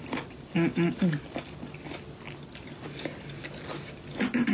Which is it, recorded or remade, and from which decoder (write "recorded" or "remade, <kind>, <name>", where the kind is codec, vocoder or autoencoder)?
recorded